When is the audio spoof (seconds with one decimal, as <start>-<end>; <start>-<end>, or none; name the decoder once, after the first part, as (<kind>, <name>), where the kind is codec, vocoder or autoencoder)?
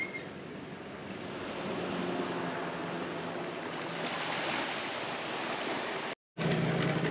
none